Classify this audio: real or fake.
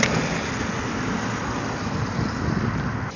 real